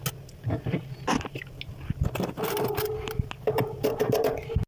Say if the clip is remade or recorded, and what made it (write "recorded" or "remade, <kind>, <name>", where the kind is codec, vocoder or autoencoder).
recorded